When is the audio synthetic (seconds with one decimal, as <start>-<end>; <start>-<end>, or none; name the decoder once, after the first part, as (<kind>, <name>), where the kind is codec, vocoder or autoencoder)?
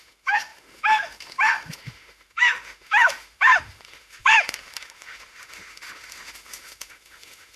0.0-7.6 (autoencoder, DAC-VAE)